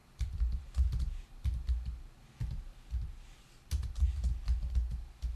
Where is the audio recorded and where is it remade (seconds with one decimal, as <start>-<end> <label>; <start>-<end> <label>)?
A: 0.0-0.6 remade; 0.6-5.4 recorded